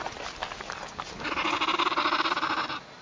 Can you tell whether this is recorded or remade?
recorded